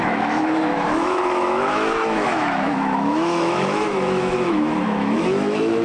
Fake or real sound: fake